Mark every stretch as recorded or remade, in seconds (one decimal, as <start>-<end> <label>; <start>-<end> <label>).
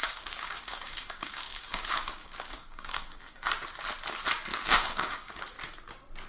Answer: 0.0-3.5 remade; 3.5-4.5 recorded; 4.5-5.4 remade; 5.4-6.3 recorded